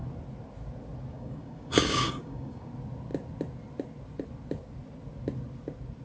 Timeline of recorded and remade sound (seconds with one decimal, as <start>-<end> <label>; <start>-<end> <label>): 0.0-1.1 recorded; 1.1-2.7 remade; 2.7-6.0 recorded